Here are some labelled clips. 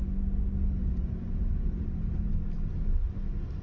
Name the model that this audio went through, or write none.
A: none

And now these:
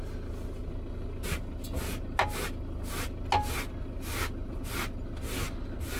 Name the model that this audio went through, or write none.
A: none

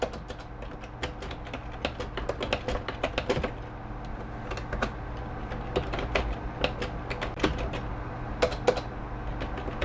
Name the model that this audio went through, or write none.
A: none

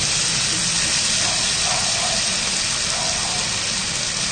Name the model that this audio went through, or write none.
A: none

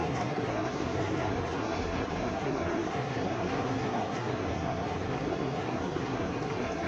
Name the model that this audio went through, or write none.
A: codec, SNAC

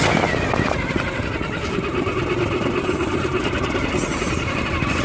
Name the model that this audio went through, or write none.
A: none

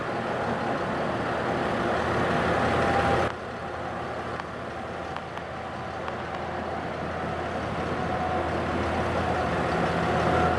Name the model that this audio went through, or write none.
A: none